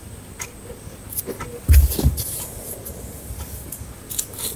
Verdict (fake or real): real